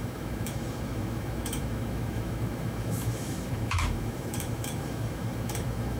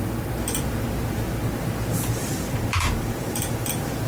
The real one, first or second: second